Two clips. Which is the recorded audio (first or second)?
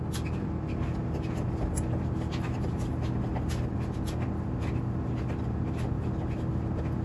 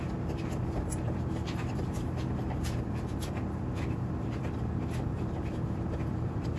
first